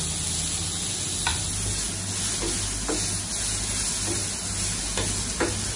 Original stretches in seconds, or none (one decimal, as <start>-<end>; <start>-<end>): 0.0-5.8